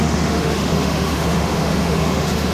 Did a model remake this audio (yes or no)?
yes